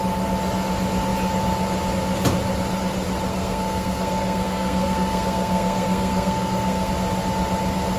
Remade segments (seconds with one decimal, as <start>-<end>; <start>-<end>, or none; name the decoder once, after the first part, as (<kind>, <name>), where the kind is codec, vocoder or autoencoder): 3.3-6.9 (codec, SNAC)